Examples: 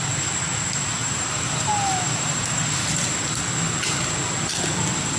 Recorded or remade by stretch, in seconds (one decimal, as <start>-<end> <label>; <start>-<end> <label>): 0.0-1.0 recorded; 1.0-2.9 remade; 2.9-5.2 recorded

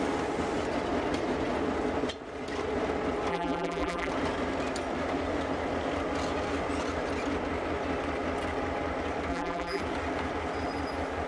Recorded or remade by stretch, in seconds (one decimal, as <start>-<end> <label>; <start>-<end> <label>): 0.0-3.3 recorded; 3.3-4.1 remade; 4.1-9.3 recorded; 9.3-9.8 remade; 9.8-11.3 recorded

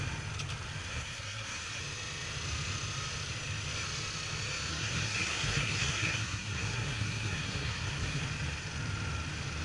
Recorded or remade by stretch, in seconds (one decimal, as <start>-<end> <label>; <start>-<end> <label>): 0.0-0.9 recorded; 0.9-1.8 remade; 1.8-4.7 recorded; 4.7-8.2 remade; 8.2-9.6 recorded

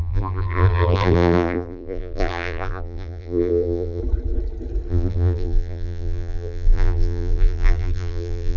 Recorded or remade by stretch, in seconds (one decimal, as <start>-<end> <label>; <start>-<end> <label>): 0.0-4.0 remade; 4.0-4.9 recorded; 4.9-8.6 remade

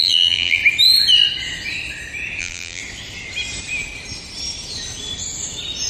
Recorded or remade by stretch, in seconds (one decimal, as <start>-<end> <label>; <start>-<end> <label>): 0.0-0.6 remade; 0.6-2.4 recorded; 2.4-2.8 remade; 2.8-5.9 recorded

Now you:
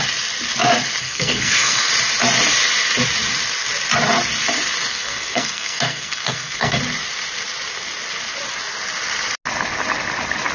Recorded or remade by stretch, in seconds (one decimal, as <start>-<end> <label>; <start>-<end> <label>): 0.0-1.0 recorded; 1.0-1.9 remade; 1.9-4.9 recorded; 4.9-6.8 remade; 6.8-10.5 recorded

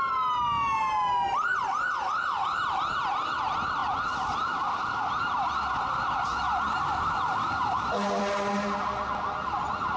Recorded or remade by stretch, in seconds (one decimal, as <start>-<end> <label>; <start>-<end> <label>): 0.0-1.5 recorded; 1.5-2.8 remade; 2.8-10.0 recorded

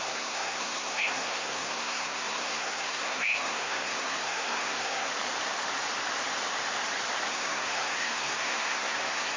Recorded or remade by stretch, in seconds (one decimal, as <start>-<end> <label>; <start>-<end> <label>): 0.0-5.1 remade; 5.1-7.3 recorded; 7.3-9.4 remade